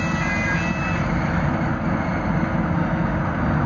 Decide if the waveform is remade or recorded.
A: recorded